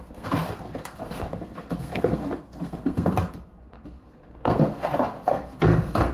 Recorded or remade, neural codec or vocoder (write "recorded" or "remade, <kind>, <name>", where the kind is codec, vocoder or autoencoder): remade, codec, SNAC